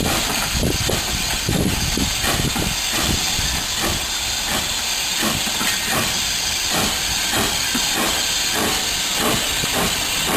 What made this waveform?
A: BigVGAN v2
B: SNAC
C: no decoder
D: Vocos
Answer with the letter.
C